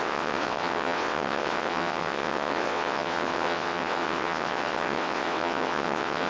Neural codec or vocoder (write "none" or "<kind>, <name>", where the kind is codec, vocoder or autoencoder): vocoder, WaveNeXt